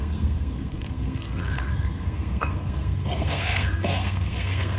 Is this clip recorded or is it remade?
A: remade